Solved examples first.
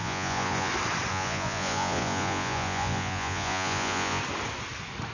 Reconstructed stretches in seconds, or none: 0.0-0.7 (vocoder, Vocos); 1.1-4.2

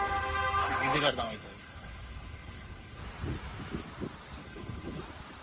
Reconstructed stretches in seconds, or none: 0.6-3.0 (codec, HILCodec); 4.4-5.0

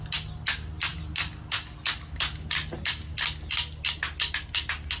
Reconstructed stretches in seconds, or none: none

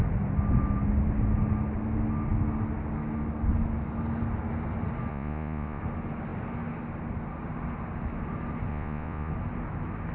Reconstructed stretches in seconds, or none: 5.1-5.8 (vocoder, Vocos); 8.7-9.3

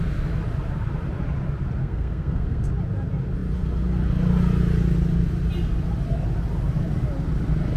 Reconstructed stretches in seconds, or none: 1.8-2.7 (codec, SNAC)

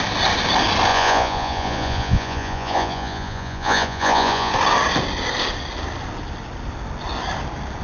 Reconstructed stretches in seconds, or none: 0.9-4.5 (vocoder, Vocos)

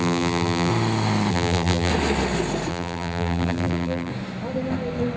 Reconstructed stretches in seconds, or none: 0.0-0.7 (vocoder, BigVGAN v2); 1.3-1.9; 2.7-4.1